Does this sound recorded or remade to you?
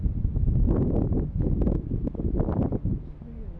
recorded